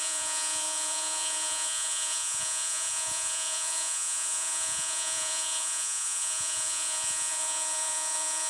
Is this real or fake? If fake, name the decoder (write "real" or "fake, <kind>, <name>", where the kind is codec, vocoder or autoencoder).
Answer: fake, vocoder, Vocos